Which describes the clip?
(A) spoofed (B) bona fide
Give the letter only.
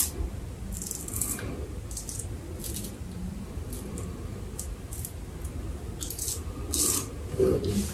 B